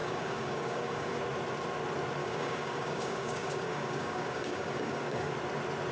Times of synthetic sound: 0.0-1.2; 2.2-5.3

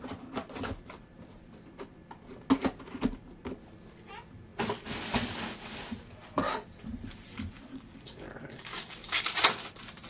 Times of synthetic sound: 7.7-9.2